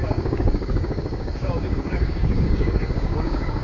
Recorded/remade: remade